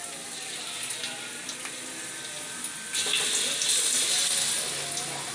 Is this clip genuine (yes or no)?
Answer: yes